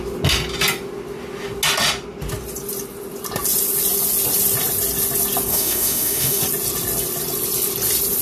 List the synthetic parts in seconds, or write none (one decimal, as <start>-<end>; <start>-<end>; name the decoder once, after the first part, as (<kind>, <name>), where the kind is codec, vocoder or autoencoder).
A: 5.5-6.4 (autoencoder, DAC-VAE)

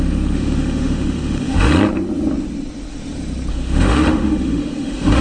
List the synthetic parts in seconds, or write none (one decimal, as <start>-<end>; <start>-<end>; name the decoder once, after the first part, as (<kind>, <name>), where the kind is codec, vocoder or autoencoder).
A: 0.0-1.7 (autoencoder, DAC-VAE); 3.5-5.2

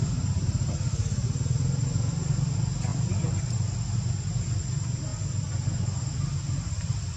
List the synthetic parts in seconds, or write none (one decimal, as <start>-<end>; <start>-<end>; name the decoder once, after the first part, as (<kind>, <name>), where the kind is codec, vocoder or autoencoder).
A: none

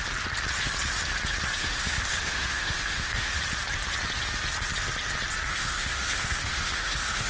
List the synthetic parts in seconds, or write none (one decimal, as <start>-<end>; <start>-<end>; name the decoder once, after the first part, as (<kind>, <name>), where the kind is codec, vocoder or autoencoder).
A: 1.6-3.4 (autoencoder, DAC-VAE); 5.5-7.3

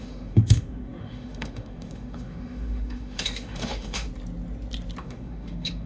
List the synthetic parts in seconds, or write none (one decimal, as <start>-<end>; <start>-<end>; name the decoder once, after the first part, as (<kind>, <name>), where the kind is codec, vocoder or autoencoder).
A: 0.0-4.1 (autoencoder, DAC-VAE); 5.0-5.9

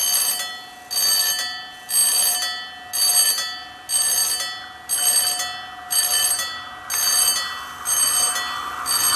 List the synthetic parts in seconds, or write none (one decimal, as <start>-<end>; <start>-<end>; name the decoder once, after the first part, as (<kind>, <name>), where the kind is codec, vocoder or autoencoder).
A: none

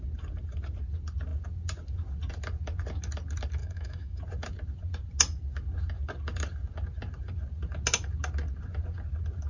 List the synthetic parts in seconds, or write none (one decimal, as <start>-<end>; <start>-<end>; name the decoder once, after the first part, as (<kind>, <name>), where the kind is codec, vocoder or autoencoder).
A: 3.6-4.2 (autoencoder, DAC-VAE)